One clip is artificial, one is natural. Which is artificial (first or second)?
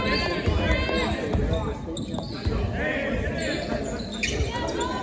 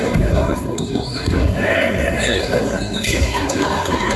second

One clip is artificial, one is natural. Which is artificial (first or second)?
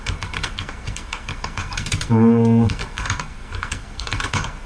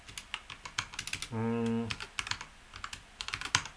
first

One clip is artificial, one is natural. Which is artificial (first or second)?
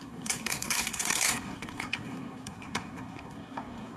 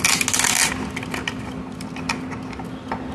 first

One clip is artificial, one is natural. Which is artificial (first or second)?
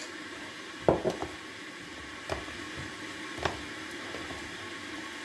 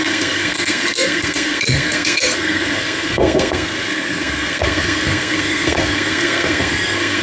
second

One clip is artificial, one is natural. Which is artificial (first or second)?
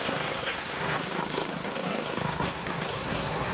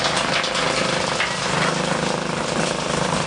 first